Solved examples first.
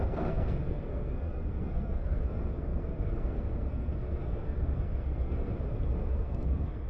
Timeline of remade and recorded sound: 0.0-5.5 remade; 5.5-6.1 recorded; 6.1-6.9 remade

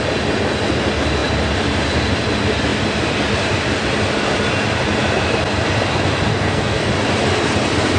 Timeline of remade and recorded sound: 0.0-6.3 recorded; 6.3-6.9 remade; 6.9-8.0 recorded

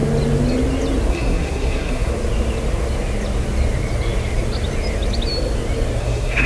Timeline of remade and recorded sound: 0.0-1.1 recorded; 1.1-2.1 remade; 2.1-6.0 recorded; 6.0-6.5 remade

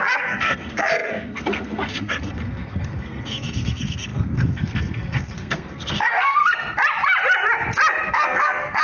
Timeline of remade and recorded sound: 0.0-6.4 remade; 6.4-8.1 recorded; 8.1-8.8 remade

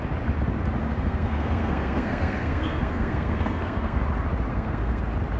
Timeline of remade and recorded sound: 0.0-0.8 recorded; 0.8-4.0 remade; 4.0-4.5 recorded; 4.5-5.0 remade; 5.0-5.4 recorded

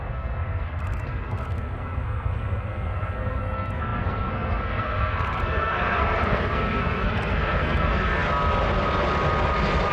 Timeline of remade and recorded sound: 0.0-8.2 remade; 8.2-9.9 recorded

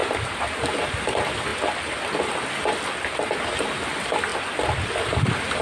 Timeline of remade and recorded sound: 0.0-5.6 recorded

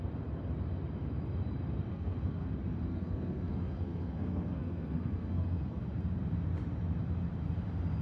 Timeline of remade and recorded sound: 0.0-1.9 recorded; 1.9-2.5 remade; 2.5-2.9 recorded; 2.9-5.8 remade; 5.8-8.0 recorded